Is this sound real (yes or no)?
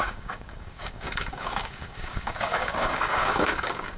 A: no